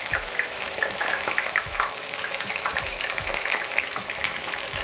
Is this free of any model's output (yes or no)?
no